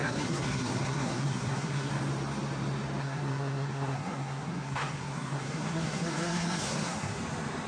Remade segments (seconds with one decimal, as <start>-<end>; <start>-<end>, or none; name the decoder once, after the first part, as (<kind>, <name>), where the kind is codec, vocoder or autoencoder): 0.0-1.9 (codec, SNAC); 3.0-7.2